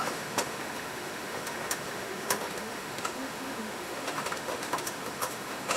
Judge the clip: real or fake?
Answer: fake